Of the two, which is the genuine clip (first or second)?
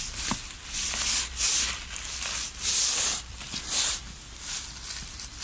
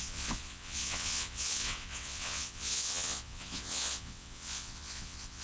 first